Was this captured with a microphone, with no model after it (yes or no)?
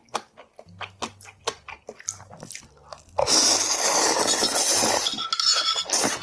yes